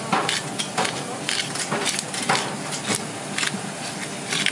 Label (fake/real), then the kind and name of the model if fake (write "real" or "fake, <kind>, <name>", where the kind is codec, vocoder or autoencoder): real